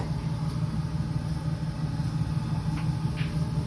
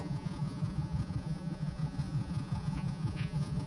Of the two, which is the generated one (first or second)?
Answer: second